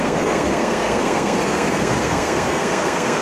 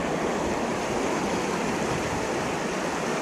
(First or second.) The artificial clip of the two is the first